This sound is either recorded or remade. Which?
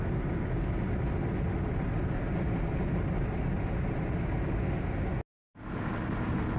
recorded